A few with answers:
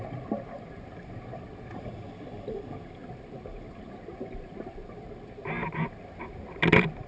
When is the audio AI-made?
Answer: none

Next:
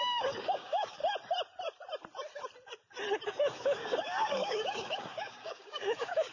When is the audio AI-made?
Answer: 0.0-1.0; 3.3-6.3

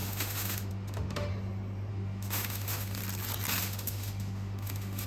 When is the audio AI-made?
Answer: 0.0-1.3; 1.9-3.0; 3.6-5.1

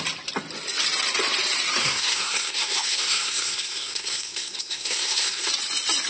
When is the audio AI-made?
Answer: 1.8-5.5

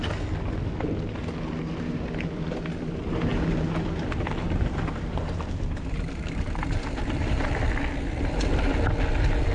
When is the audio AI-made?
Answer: 3.3-7.5

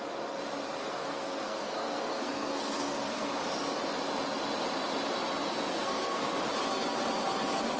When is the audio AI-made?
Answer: 0.8-3.4; 5.7-6.3

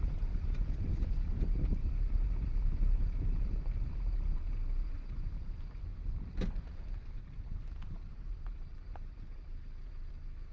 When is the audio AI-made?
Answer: 0.0-10.5

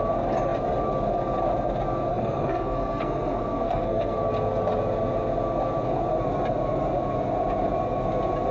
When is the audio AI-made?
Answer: 2.1-4.2